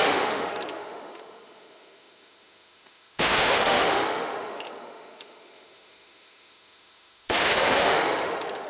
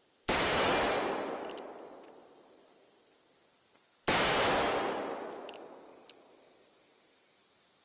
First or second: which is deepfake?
first